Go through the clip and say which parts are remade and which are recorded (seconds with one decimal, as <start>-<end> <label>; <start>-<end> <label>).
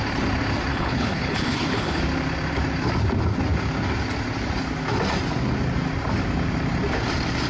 0.0-0.7 recorded; 0.7-2.0 remade; 2.0-7.5 recorded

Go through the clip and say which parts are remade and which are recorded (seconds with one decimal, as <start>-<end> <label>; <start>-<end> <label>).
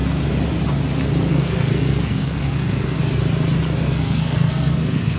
0.0-1.3 recorded; 1.3-3.0 remade; 3.0-3.8 recorded; 3.8-5.2 remade